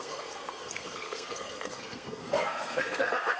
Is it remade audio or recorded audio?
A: remade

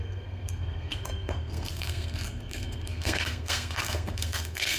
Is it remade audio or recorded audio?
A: remade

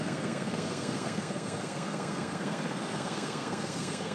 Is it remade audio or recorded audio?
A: remade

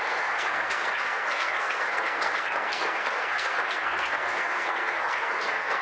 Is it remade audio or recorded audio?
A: remade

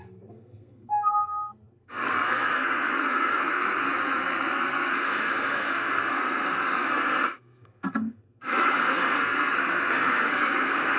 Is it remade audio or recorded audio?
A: remade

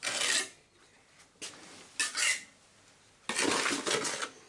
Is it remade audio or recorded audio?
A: recorded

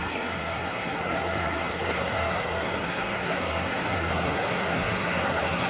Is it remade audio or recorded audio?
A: remade